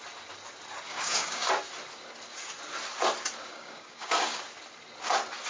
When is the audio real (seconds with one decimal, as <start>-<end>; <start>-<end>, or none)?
0.0-0.9; 1.5-3.5; 4.4-5.5

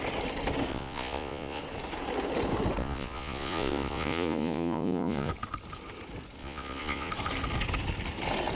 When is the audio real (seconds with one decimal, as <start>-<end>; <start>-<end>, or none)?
0.0-0.7; 1.6-2.8; 5.3-6.4; 7.1-8.5

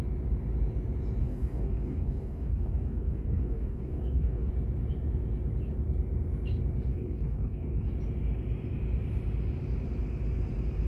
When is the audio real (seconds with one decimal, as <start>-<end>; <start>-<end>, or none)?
0.0-1.2; 4.5-6.9; 7.9-10.9

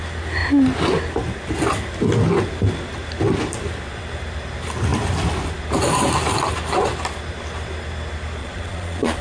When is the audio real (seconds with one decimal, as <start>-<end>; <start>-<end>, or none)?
0.0-8.4

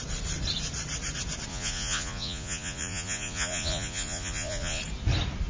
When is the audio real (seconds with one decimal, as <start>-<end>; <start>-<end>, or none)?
0.0-1.5; 4.8-5.5

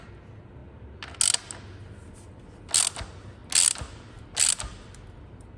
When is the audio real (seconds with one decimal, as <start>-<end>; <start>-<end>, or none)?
0.0-5.6